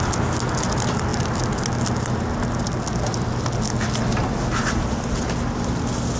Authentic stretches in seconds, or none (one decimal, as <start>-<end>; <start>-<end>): 0.0-6.2

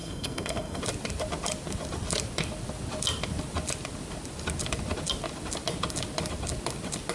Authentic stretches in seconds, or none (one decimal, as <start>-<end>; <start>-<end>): 0.8-7.1

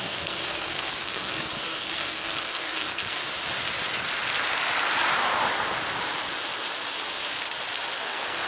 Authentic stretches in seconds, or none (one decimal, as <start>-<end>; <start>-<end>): 3.2-8.0

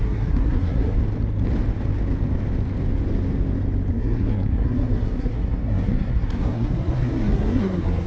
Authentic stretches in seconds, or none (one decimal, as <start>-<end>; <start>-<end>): 1.0-3.9